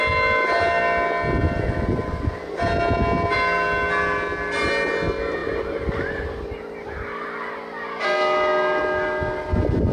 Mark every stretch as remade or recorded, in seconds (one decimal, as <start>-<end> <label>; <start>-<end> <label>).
0.0-9.9 recorded